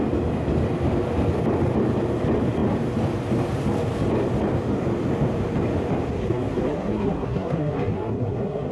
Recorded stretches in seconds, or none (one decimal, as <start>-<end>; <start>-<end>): 0.0-6.2